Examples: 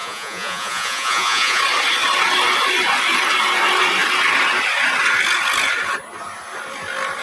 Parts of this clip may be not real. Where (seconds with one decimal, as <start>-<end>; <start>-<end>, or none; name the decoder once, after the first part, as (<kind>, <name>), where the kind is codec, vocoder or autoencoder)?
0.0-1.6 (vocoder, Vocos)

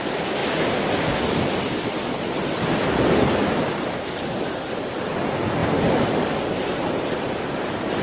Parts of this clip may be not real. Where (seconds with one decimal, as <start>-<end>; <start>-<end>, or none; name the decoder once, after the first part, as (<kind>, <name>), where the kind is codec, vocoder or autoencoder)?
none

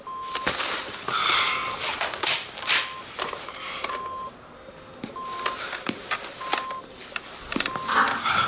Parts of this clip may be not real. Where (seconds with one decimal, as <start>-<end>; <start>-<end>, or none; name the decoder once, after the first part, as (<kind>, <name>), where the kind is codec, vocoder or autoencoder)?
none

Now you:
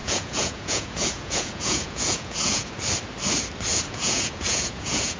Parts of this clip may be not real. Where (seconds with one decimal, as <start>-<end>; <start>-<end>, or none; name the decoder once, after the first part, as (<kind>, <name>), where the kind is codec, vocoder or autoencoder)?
0.0-2.7 (vocoder, Vocos); 3.7-5.2

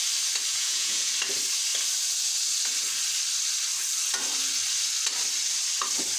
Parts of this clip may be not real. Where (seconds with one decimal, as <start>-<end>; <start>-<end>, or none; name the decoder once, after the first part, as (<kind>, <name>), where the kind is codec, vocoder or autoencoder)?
0.5-1.1 (vocoder, Vocos)

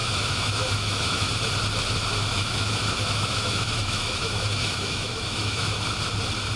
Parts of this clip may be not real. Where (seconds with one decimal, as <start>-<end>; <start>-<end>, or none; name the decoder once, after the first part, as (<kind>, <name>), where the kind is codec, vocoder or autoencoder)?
0.0-1.3 (autoencoder, DAC-VAE); 2.1-5.8